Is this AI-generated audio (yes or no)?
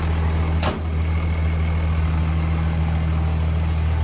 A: no